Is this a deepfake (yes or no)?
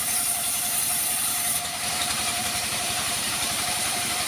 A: yes